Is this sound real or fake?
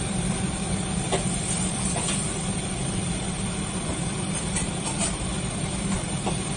fake